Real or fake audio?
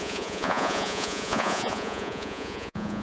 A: fake